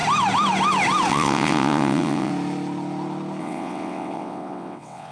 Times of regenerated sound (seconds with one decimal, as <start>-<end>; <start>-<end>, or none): 1.1-2.3; 3.4-5.1